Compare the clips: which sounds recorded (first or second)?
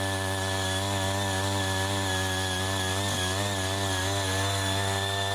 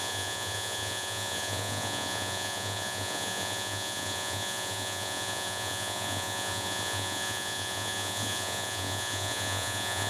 first